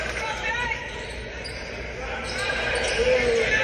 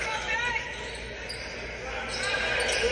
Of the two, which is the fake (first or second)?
first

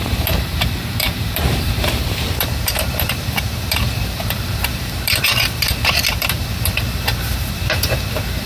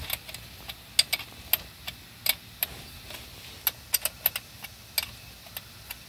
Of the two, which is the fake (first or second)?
first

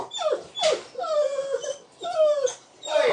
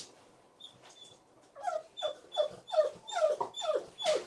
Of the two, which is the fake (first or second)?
second